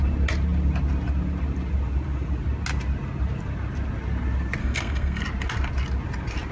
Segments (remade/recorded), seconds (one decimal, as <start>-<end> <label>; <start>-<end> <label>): 0.0-4.6 recorded; 4.6-5.2 remade; 5.2-6.5 recorded

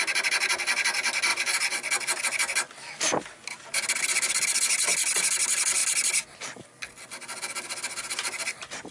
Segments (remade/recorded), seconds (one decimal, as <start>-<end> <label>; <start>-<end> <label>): 0.0-8.9 recorded

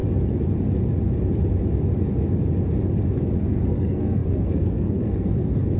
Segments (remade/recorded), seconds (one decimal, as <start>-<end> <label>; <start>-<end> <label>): 0.0-3.4 recorded; 3.4-5.8 remade

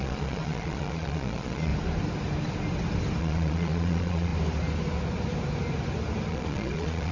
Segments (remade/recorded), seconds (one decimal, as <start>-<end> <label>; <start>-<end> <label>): 0.0-1.7 remade; 1.7-3.2 recorded; 3.2-4.3 remade; 4.3-6.3 recorded; 6.3-7.1 remade